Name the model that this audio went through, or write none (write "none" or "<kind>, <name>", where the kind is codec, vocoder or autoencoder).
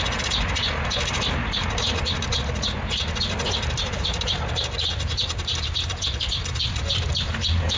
none